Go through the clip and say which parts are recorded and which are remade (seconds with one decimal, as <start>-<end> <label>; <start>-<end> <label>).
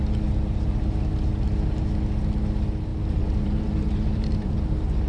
0.0-2.9 recorded; 2.9-5.1 remade